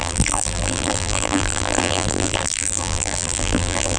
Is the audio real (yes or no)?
no